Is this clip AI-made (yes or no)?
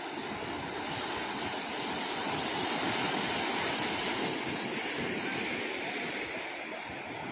no